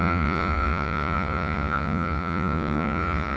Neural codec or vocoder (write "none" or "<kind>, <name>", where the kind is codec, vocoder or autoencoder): vocoder, Vocos